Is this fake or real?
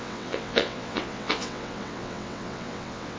fake